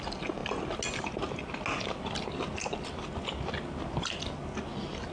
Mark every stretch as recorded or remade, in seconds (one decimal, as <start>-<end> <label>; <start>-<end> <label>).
0.0-5.1 recorded